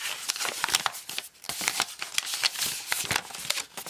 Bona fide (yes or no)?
yes